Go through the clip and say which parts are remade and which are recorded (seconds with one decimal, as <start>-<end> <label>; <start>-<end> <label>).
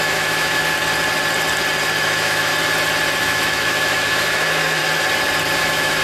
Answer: 0.0-0.6 remade; 0.6-2.0 recorded; 2.0-2.5 remade; 2.5-3.2 recorded; 3.2-4.8 remade; 4.8-5.6 recorded; 5.6-6.0 remade